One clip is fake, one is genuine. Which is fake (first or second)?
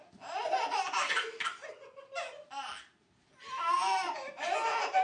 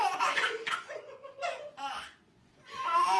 second